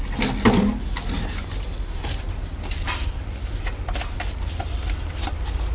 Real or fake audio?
real